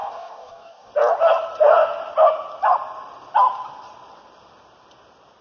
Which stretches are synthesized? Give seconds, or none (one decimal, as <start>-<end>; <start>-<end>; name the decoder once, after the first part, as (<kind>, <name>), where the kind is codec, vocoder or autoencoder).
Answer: 0.0-0.9 (codec, DAC)